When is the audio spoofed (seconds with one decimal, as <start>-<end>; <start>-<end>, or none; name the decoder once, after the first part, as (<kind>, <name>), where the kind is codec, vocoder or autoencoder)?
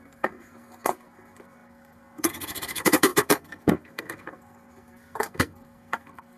0.0-6.4 (codec, SNAC)